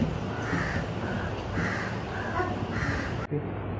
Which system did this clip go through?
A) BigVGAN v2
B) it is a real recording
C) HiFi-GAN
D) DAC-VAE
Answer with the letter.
B